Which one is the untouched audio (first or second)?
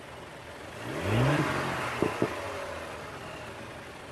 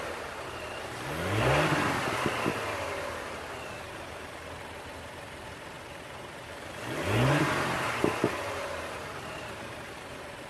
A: first